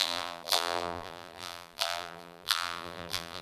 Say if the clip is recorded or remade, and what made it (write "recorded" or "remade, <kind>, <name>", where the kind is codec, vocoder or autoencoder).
remade, vocoder, BigVGAN v2